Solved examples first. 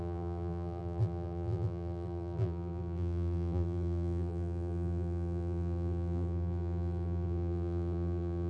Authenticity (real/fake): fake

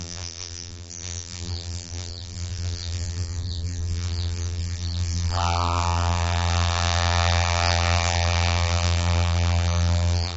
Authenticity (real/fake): fake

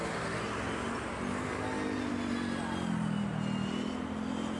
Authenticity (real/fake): real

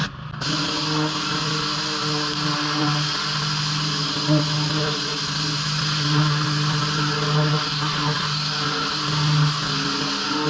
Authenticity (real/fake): real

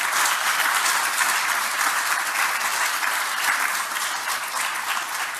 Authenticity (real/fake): real